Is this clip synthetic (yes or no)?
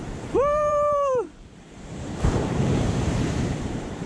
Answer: yes